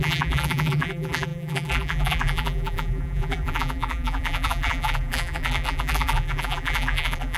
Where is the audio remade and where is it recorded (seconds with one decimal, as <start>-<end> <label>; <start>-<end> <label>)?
0.0-7.4 remade